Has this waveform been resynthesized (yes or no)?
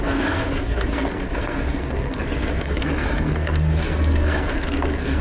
yes